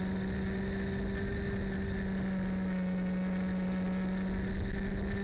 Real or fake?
real